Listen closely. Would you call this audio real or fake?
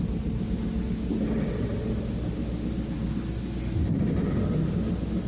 real